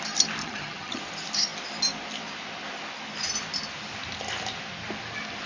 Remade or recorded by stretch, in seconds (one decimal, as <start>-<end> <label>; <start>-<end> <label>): 0.0-0.4 recorded; 0.4-1.0 remade; 1.0-5.5 recorded